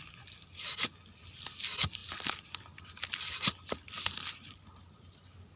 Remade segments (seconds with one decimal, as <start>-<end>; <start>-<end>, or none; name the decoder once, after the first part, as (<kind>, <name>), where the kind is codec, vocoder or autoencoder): none